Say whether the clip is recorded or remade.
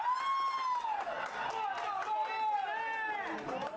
recorded